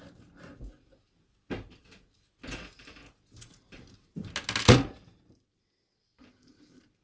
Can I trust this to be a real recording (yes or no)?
yes